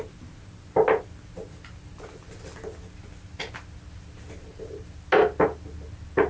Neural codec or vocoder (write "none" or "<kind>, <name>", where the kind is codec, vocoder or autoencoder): none